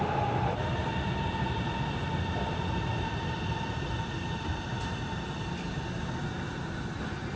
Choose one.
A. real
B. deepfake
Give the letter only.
A